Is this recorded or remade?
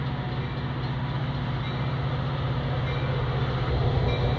recorded